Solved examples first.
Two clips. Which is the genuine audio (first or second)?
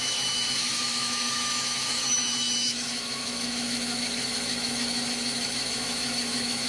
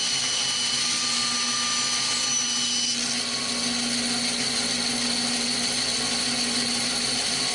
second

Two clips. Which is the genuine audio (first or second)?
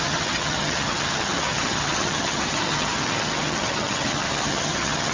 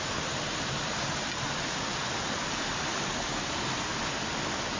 second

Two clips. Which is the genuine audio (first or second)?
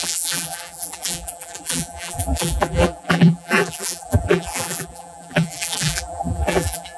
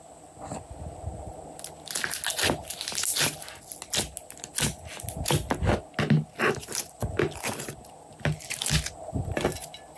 second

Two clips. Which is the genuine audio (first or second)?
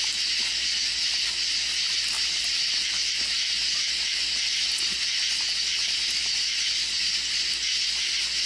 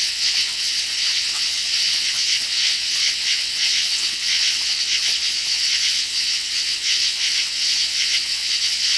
first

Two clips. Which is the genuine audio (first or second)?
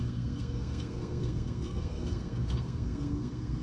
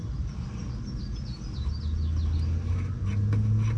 second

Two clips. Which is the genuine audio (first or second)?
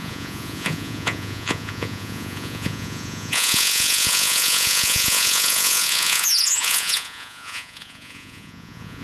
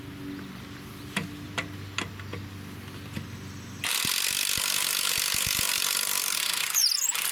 second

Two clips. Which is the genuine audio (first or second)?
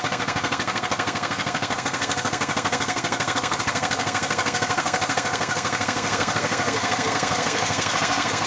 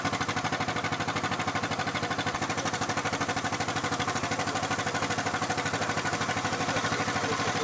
second